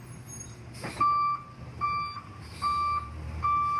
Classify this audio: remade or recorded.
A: recorded